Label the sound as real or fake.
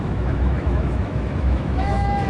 fake